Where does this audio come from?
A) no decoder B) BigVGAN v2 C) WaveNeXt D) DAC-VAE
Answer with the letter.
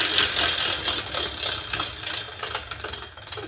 A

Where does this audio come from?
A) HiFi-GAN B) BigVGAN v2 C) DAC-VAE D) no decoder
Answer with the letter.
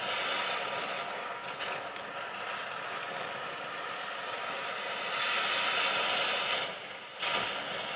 D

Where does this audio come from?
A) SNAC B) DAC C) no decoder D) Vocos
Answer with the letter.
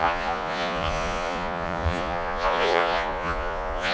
D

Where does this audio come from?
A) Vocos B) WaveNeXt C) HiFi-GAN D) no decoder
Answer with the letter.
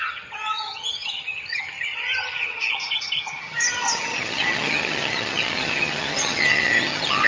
C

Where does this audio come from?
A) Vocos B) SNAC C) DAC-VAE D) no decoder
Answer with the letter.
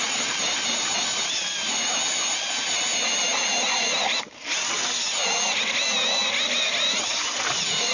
D